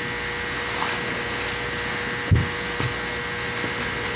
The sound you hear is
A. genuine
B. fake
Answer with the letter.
A